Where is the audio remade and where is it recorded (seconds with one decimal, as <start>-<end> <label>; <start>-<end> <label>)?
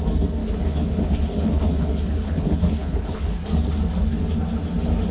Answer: 0.0-0.4 recorded; 0.4-3.5 remade; 3.5-5.1 recorded